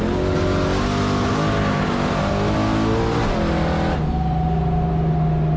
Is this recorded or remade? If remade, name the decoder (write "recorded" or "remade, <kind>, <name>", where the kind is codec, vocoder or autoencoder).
recorded